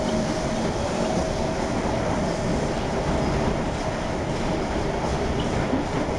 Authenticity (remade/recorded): remade